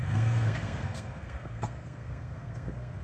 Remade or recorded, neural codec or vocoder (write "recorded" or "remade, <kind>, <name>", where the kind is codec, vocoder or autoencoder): remade, codec, SNAC